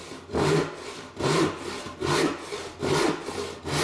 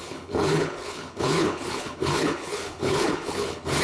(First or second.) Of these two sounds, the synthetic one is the second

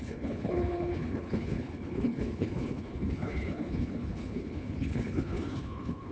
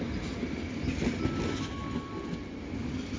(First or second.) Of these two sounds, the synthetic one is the first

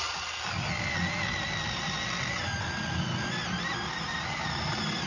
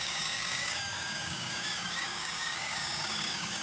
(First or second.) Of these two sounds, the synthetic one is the second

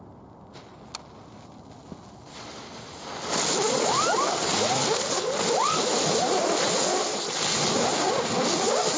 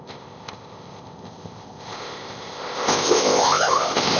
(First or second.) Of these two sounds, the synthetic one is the second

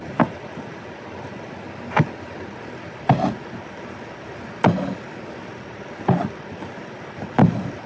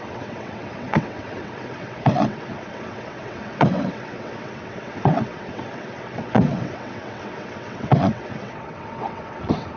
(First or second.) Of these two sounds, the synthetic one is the second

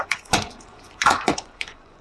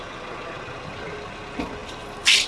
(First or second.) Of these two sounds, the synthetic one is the first